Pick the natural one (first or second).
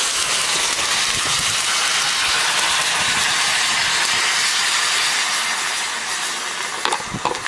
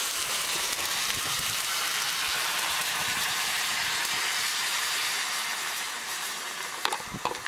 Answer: first